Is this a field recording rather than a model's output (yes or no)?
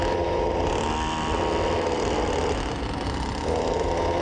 yes